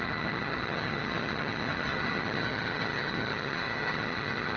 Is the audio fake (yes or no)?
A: yes